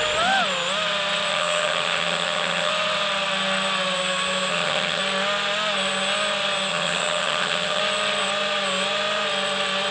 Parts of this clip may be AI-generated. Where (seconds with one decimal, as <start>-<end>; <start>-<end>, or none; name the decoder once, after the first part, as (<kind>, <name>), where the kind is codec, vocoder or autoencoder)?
1.3-2.7 (vocoder, HiFi-GAN); 4.5-5.0; 6.7-7.8